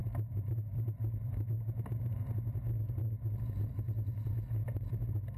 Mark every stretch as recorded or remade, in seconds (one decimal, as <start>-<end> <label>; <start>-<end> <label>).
0.0-5.4 recorded